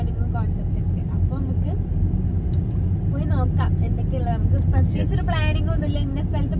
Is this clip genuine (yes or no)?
yes